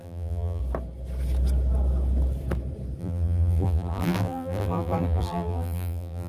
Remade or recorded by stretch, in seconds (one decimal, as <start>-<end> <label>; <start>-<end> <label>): 0.0-0.6 remade; 0.6-3.0 recorded; 3.0-6.3 remade